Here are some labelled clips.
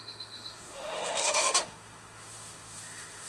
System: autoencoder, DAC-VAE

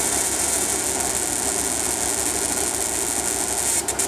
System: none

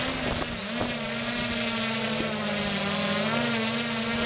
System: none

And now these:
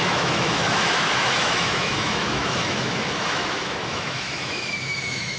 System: autoencoder, DAC-VAE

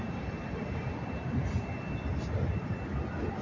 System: none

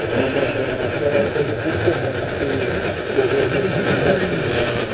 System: none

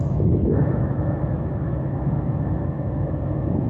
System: autoencoder, DAC-VAE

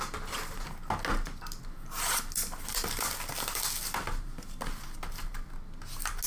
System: none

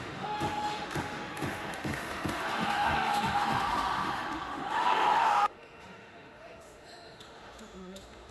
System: autoencoder, DAC-VAE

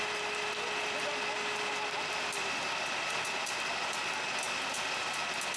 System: none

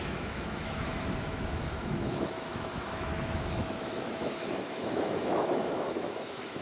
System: autoencoder, DAC-VAE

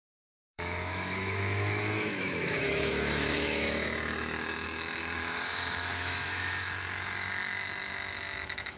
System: autoencoder, DAC-VAE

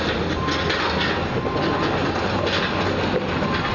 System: none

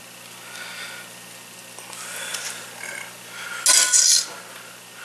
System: none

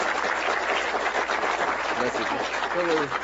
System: none